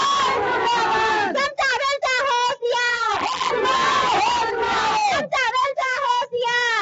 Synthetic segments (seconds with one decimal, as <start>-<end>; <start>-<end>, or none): 2.9-3.5; 5.6-6.1